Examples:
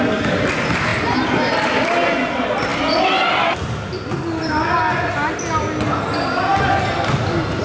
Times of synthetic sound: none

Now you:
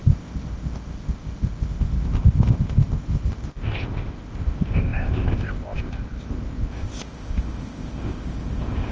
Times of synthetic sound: 0.0-8.9 (codec, ZipCodec)

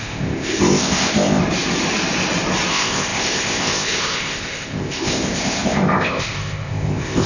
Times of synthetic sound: 0.0-1.4 (codec, ZipCodec); 2.7-7.3

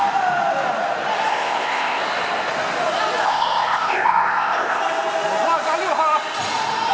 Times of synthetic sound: 1.3-2.0 (codec, ZipCodec); 3.2-4.8